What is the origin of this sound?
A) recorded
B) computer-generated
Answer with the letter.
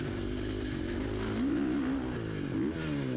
A